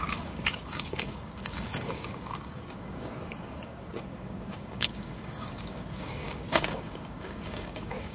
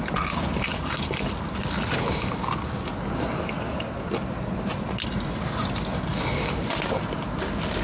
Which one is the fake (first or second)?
first